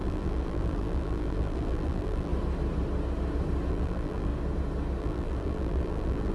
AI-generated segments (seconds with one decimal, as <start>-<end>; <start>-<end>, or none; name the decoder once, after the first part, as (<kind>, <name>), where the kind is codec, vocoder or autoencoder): 0.0-2.3 (vocoder, BigVGAN v2); 3.7-4.3; 5.0-6.3